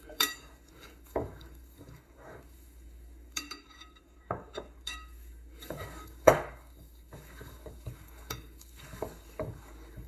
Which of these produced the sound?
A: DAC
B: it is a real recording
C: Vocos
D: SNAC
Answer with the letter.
A